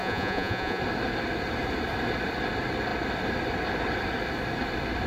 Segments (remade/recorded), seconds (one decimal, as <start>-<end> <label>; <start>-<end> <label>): 0.0-0.8 remade; 0.8-5.1 recorded